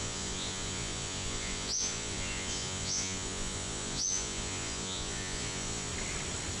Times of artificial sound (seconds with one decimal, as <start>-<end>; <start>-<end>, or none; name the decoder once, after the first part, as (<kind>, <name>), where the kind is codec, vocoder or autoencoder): 0.0-5.9 (vocoder, Vocos)